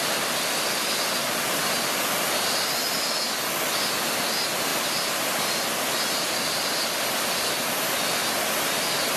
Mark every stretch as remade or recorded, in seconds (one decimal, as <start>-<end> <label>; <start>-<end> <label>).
0.0-9.2 recorded